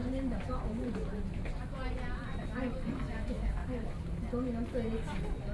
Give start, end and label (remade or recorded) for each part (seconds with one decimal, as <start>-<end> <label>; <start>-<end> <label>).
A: 0.0-1.6 remade; 1.6-3.6 recorded; 3.6-4.2 remade; 4.2-5.5 recorded